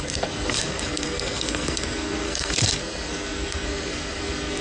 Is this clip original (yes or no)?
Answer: no